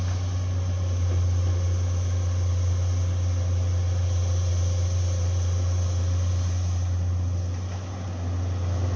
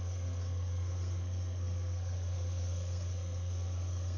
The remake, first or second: second